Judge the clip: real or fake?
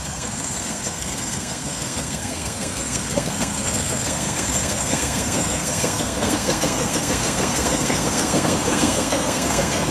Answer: fake